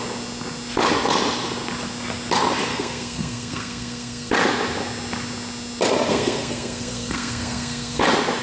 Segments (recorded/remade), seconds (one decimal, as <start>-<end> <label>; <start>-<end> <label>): 0.0-2.7 recorded; 2.7-4.3 remade; 4.3-6.1 recorded; 6.1-8.0 remade; 8.0-8.4 recorded